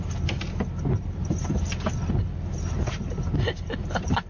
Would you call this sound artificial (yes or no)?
no